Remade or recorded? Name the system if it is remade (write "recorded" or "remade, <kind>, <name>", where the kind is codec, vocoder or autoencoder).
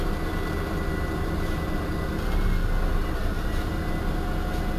recorded